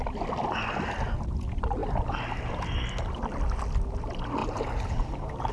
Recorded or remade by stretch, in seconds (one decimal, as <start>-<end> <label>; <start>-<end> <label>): 0.0-4.4 recorded; 4.4-5.5 remade